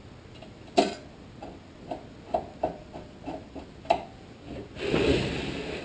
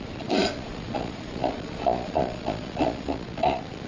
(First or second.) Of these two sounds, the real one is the first